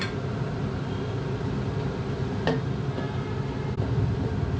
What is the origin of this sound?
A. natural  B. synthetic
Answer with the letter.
A